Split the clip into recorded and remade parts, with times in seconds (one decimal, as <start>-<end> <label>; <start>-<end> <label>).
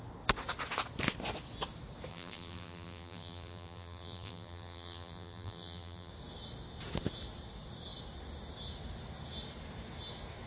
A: 0.0-2.1 recorded; 2.1-6.1 remade; 6.1-10.5 recorded